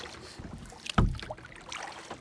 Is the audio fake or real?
real